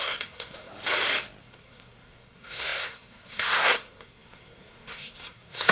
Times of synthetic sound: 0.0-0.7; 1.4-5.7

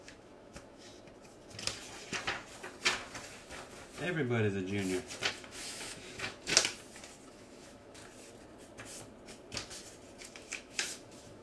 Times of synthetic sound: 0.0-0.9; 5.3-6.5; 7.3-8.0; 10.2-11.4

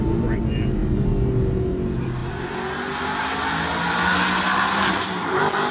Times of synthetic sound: none

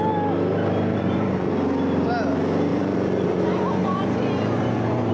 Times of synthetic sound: 0.9-1.5; 2.7-5.1

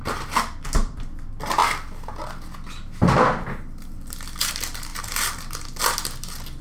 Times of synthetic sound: none